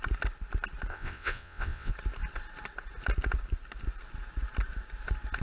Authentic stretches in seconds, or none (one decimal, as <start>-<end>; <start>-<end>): 0.0-0.9; 1.9-5.4